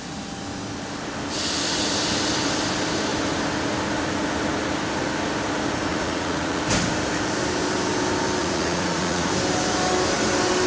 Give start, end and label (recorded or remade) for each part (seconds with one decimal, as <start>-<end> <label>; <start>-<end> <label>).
0.0-5.9 recorded; 5.9-6.6 remade; 6.6-8.4 recorded; 8.4-9.3 remade; 9.3-10.7 recorded